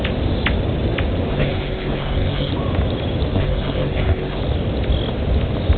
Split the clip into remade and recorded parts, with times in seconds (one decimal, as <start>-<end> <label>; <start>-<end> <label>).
0.0-1.3 recorded; 1.3-2.5 remade; 2.5-3.3 recorded; 3.3-4.4 remade; 4.4-5.8 recorded